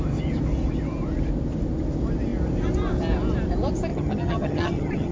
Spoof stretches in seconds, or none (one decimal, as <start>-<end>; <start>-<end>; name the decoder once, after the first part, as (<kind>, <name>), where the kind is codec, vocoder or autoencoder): 3.9-5.1 (vocoder, HiFi-GAN)